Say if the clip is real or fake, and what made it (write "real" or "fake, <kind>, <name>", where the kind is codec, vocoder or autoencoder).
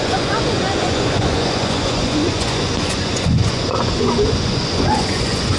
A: fake, vocoder, Vocos